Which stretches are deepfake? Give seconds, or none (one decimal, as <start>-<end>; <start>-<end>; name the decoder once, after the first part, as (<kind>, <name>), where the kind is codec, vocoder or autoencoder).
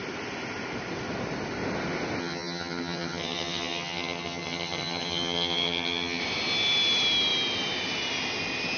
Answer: 2.2-6.2 (vocoder, HiFi-GAN)